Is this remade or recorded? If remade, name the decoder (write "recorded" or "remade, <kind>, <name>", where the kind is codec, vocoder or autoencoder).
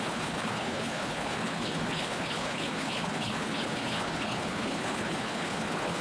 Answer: remade, codec, HILCodec